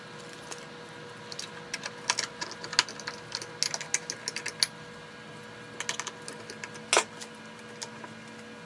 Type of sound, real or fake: real